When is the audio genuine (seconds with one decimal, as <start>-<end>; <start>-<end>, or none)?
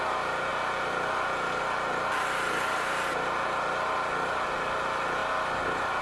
0.0-6.0